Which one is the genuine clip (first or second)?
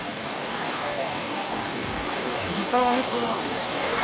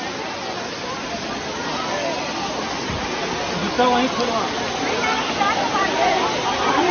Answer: second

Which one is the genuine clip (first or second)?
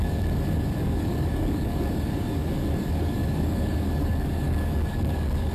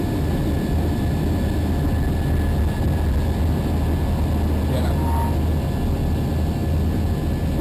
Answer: second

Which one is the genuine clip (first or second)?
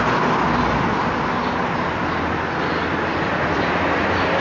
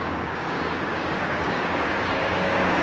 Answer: first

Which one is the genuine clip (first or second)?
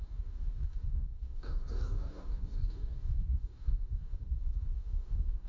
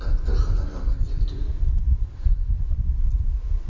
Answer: second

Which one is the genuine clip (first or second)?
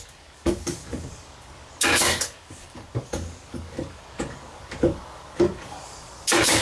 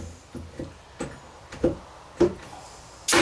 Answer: second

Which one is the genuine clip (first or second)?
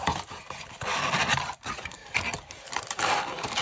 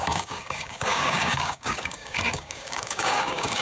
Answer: first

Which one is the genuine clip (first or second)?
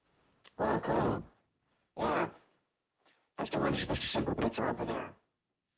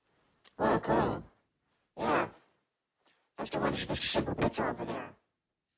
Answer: second